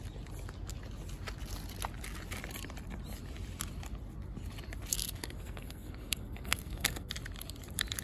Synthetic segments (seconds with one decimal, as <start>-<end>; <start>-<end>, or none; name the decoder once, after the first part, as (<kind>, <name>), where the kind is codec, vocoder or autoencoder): 4.9-7.1 (codec, SNAC)